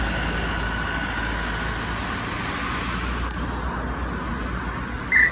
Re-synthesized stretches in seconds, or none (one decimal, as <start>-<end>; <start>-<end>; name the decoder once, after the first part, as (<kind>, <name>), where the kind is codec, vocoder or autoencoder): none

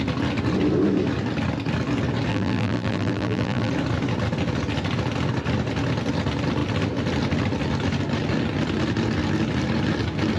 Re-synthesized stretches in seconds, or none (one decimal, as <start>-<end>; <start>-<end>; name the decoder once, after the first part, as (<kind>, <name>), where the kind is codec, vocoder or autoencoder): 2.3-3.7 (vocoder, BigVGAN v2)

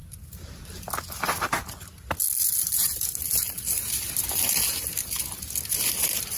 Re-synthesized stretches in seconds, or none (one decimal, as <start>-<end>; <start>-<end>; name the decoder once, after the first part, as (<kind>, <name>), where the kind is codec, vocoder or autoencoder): none

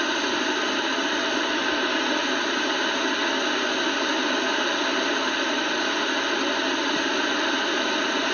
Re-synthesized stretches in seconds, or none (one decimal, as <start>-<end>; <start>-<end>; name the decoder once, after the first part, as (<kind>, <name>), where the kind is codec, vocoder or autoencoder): none

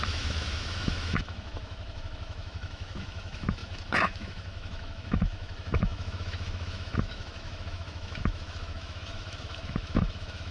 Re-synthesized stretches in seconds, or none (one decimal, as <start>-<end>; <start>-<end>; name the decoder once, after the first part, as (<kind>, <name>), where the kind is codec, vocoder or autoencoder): 0.0-10.5 (autoencoder, DAC-VAE)

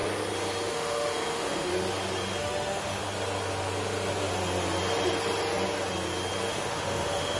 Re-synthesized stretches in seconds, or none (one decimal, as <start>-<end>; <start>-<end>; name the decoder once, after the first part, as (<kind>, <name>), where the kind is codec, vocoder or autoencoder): 0.7-1.7 (autoencoder, DAC-VAE); 2.4-3.0; 6.5-7.4

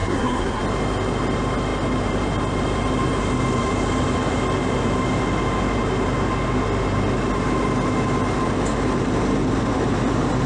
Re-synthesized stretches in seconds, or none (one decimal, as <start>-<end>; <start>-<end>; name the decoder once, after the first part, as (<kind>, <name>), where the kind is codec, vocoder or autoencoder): 0.0-0.6 (codec, SNAC)

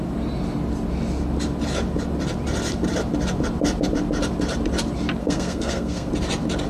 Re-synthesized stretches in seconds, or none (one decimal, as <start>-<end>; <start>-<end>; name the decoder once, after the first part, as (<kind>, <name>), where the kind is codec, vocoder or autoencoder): 5.2-6.1 (codec, SNAC)